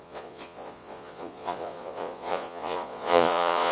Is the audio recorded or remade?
remade